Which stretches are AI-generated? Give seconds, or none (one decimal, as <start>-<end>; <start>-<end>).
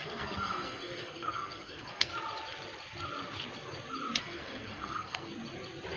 0.0-2.1; 4.2-5.3